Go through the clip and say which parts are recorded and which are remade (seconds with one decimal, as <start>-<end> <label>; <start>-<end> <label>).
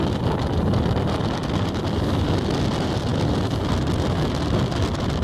0.0-5.2 recorded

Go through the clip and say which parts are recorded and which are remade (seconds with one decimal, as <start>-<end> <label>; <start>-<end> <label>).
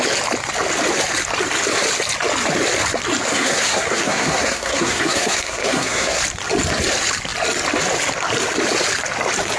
0.0-3.3 recorded; 3.3-6.2 remade; 6.2-9.6 recorded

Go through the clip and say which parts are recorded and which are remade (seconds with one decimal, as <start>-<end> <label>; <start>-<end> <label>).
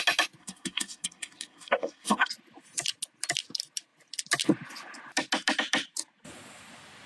0.0-0.4 recorded; 0.4-2.3 remade; 2.3-7.1 recorded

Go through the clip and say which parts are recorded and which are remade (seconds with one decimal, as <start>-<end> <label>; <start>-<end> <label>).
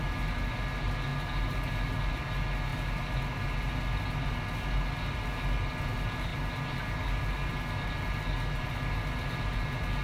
0.0-10.0 recorded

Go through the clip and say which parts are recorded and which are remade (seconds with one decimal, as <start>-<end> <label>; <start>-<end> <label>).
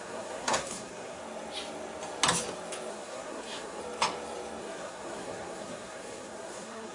0.0-1.2 remade; 1.2-2.9 recorded; 2.9-3.8 remade; 3.8-4.6 recorded; 4.6-6.9 remade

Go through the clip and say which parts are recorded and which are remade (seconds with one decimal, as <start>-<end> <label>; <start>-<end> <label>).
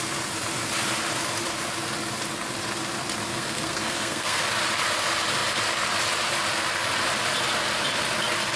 0.0-3.3 recorded; 3.3-4.4 remade; 4.4-8.6 recorded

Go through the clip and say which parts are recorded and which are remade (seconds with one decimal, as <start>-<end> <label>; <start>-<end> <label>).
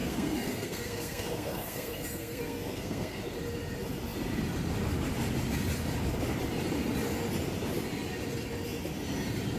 0.0-3.2 remade; 3.2-9.6 recorded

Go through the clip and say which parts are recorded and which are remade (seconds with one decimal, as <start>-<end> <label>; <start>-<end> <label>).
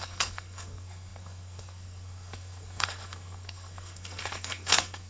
0.0-5.1 remade